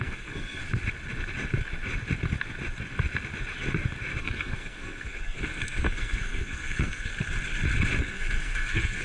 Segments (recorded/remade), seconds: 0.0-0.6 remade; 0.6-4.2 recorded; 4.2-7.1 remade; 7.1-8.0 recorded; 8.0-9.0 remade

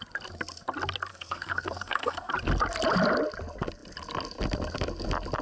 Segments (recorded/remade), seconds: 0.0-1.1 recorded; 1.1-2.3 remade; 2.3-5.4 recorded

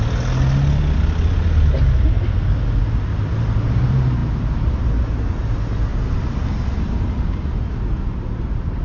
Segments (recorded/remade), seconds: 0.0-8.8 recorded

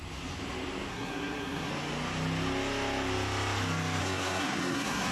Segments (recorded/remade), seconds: 0.0-0.9 recorded; 0.9-1.7 remade; 1.7-4.0 recorded; 4.0-5.1 remade

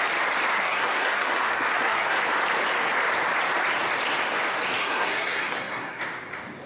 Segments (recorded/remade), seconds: 0.0-0.5 recorded; 0.5-2.2 remade; 2.2-4.8 recorded; 4.8-6.0 remade; 6.0-6.7 recorded

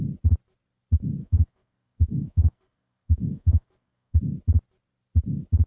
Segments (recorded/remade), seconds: 0.0-1.2 recorded; 1.2-4.2 remade; 4.2-5.7 recorded

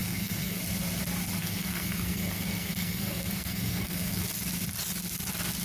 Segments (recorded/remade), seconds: 0.0-0.6 remade; 0.6-1.4 recorded; 1.4-4.2 remade; 4.2-5.6 recorded